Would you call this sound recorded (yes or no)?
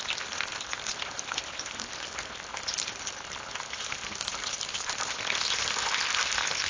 yes